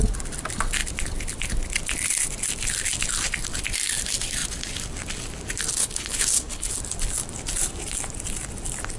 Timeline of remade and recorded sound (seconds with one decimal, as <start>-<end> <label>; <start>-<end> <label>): 0.0-5.8 recorded; 5.8-6.7 remade; 6.7-9.0 recorded